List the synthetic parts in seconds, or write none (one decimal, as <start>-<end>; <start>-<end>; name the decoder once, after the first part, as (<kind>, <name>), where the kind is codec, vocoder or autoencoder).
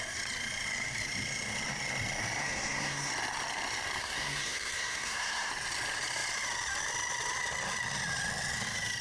2.4-3.1 (codec, SNAC); 4.0-5.5